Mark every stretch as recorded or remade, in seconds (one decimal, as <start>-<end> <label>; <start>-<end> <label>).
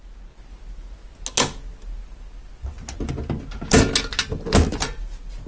0.0-5.5 recorded